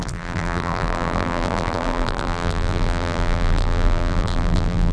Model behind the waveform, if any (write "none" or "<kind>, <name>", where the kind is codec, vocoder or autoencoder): vocoder, BigVGAN v2